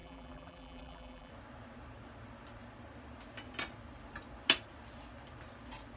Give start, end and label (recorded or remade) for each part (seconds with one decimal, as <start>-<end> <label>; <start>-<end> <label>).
0.0-1.3 remade; 1.3-6.0 recorded